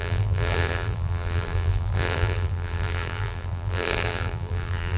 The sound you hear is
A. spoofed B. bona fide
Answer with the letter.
A